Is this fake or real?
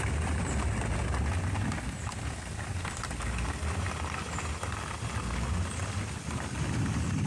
real